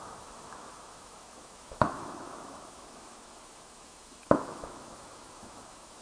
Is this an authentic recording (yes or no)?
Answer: no